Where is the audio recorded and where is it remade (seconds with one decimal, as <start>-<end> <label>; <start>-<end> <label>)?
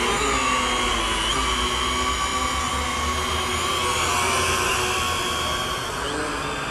0.0-6.7 recorded